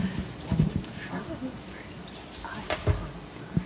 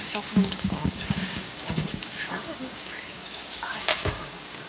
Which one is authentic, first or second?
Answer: first